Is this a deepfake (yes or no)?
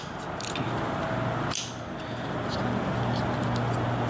no